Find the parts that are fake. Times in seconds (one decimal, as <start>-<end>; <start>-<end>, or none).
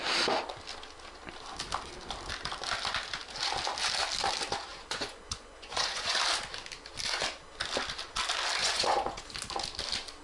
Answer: 4.7-6.2; 8.6-9.2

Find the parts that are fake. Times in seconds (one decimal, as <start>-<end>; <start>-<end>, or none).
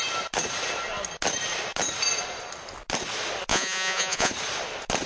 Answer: 3.5-4.3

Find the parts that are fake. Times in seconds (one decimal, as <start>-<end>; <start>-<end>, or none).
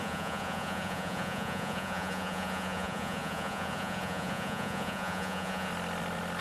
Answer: 0.0-5.7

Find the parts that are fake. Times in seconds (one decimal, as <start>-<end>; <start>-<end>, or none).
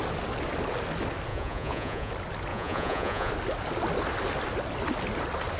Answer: 1.3-2.1; 2.5-3.3